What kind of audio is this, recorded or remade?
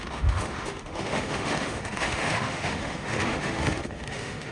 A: remade